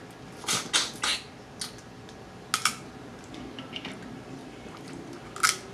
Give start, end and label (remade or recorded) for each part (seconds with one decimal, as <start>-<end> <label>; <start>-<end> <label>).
0.0-2.6 recorded; 2.6-3.3 remade; 3.3-4.4 recorded; 4.4-5.2 remade; 5.2-5.7 recorded